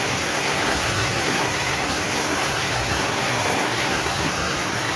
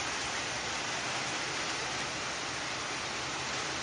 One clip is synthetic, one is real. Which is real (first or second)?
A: second